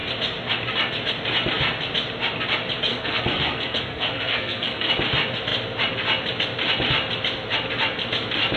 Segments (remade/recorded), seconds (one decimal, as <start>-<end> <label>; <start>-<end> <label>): 0.0-2.9 recorded; 2.9-4.9 remade; 4.9-8.6 recorded